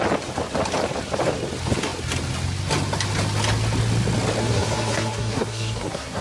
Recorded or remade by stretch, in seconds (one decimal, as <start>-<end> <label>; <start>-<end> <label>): 0.0-4.4 recorded; 4.4-6.2 remade